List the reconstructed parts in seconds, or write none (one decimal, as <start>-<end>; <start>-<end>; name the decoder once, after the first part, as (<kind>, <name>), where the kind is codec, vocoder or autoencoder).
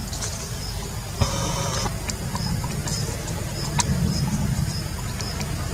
none